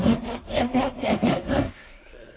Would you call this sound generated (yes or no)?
yes